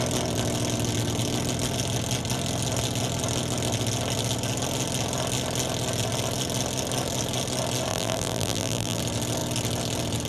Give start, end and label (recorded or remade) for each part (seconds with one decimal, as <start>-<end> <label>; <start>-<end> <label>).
0.0-7.9 recorded; 7.9-9.0 remade; 9.0-10.3 recorded

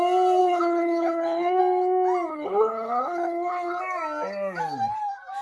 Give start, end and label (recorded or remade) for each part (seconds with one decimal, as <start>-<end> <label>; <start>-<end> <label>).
0.0-0.4 recorded; 0.4-1.6 remade; 1.6-2.3 recorded; 2.3-3.8 remade; 3.8-5.4 recorded